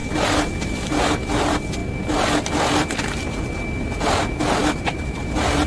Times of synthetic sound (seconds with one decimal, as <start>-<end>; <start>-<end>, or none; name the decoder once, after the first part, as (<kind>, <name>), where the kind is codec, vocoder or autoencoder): 0.0-1.1 (vocoder, BigVGAN v2); 4.6-5.7